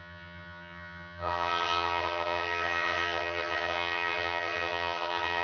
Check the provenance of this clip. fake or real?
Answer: fake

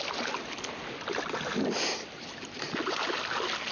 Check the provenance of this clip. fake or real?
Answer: real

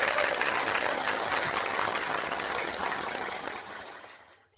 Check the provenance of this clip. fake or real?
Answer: fake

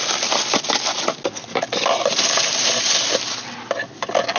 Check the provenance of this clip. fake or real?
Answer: real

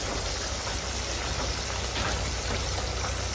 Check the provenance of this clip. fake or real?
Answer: real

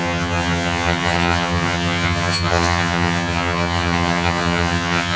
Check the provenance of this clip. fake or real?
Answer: fake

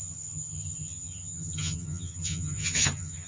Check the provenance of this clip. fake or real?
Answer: fake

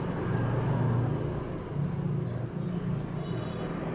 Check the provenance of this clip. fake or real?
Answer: real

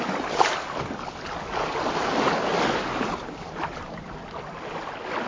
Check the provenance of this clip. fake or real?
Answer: real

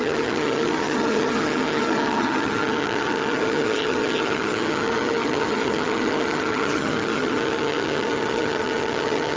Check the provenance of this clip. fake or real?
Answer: fake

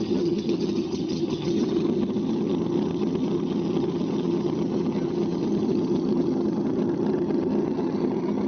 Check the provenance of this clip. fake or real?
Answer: fake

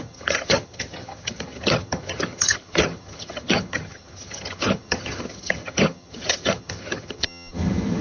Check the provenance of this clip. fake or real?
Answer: fake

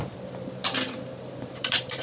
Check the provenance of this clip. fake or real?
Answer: real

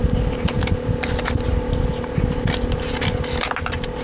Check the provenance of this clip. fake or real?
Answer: real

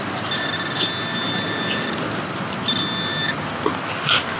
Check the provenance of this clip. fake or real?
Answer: real